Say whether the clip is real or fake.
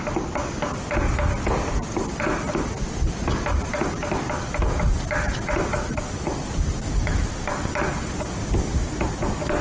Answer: real